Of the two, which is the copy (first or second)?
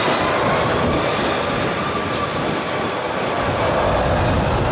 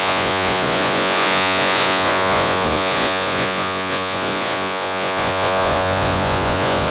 second